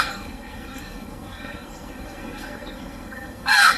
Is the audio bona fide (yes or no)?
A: no